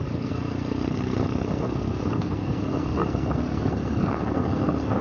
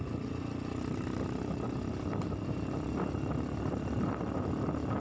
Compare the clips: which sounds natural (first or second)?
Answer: second